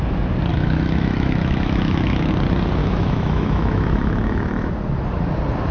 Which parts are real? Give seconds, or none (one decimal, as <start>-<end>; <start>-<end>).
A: 0.0-0.5; 2.3-2.8; 4.7-5.7